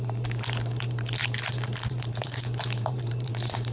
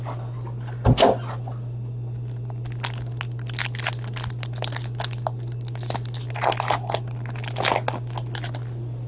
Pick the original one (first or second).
second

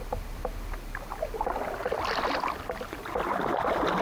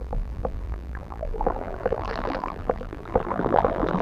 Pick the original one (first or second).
first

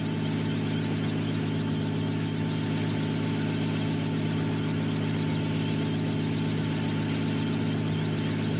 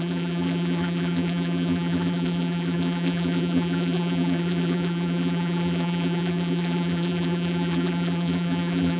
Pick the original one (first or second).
first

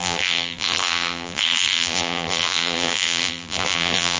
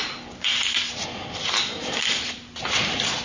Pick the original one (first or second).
second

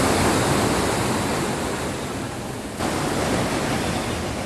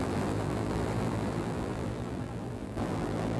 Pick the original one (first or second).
first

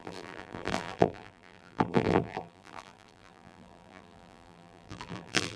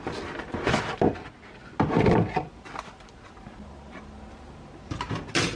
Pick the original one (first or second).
second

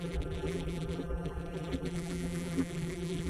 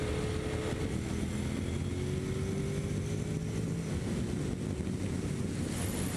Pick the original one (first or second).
second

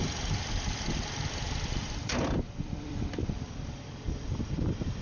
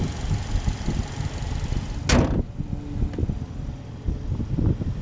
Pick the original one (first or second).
second